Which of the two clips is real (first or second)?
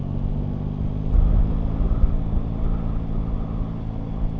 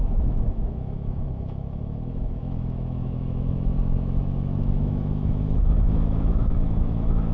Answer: first